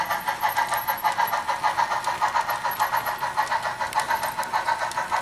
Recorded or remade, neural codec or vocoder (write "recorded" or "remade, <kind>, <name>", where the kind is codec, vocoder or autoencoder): recorded